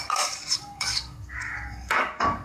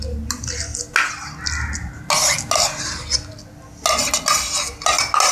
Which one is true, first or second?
second